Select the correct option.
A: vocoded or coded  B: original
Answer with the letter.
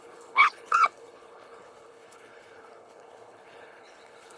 A